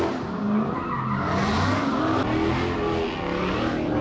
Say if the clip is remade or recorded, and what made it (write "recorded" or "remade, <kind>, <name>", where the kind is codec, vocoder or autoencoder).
recorded